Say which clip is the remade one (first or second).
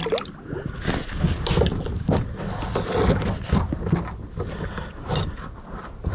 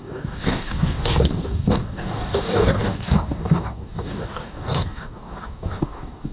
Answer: second